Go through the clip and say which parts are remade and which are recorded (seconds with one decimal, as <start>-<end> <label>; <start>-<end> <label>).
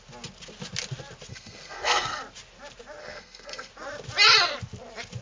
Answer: 0.0-1.3 recorded; 1.3-2.2 remade; 2.2-3.0 recorded; 3.0-3.7 remade; 3.7-5.2 recorded